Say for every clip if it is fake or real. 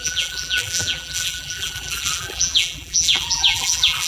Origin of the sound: fake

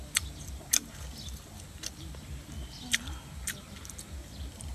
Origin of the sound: real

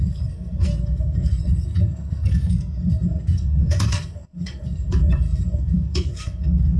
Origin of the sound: fake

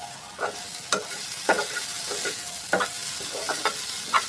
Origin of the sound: real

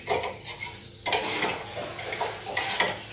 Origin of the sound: real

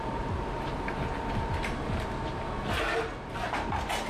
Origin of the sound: real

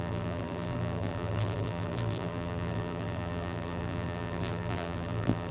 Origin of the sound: fake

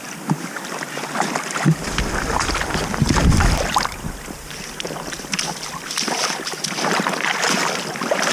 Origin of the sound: real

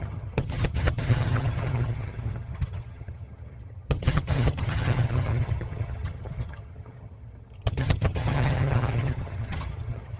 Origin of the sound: fake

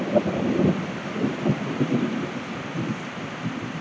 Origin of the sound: fake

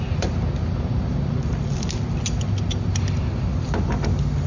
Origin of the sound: real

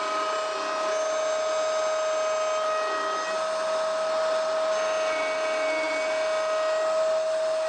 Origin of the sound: real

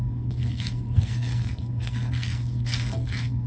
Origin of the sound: fake